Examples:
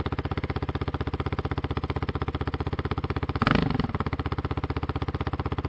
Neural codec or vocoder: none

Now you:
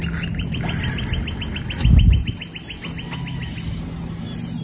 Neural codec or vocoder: none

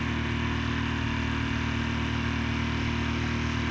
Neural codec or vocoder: none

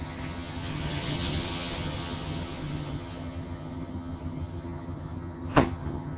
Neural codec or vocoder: vocoder, HiFi-GAN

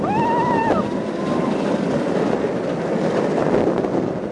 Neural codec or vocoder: none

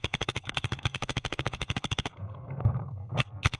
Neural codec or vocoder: codec, SNAC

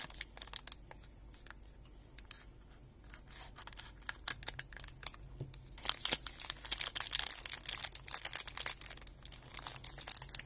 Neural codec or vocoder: none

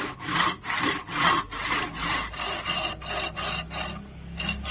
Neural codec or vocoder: none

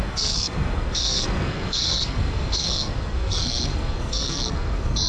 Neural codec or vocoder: codec, SNAC